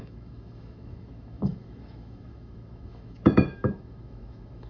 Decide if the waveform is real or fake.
fake